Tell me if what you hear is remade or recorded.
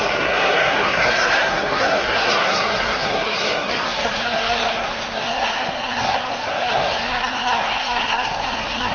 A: remade